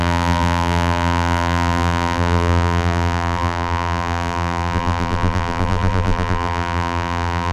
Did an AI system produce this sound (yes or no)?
yes